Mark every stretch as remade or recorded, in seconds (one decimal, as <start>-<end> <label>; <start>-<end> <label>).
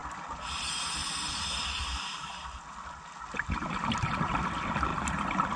0.0-0.6 remade; 0.6-1.0 recorded; 1.0-3.7 remade; 3.7-5.6 recorded